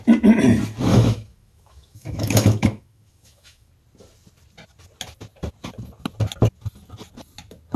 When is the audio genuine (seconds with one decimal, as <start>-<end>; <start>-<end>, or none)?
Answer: 0.0-0.9; 3.7-7.8